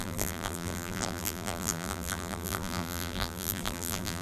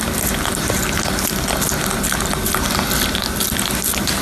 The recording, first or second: second